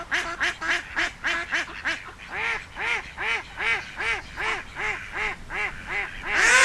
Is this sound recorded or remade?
recorded